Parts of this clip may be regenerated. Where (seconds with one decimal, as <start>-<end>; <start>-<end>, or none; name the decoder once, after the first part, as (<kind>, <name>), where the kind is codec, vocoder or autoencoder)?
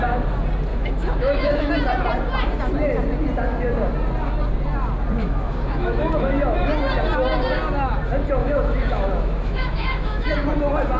0.7-1.7 (autoencoder, DAC-VAE); 5.2-6.7; 8.4-10.3